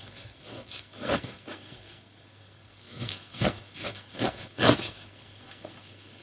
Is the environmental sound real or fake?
fake